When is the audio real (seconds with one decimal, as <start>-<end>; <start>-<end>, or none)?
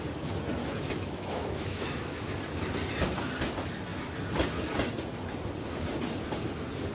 0.0-0.6; 2.4-6.9